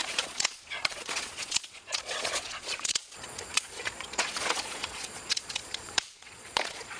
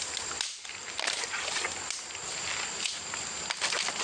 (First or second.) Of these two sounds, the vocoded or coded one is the first